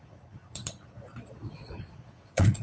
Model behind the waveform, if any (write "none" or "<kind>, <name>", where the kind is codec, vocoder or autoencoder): vocoder, Vocos